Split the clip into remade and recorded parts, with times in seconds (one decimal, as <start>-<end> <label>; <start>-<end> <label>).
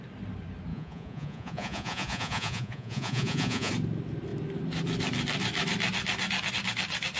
0.0-0.7 recorded; 0.7-3.7 remade; 3.7-7.2 recorded